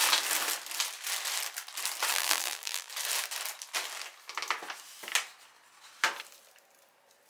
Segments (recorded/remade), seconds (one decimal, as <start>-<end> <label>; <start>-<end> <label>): 0.0-2.1 recorded; 2.1-2.9 remade; 2.9-7.3 recorded